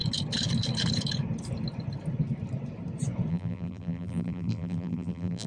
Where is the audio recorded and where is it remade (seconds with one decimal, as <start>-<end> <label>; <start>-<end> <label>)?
0.0-3.3 recorded; 3.3-5.5 remade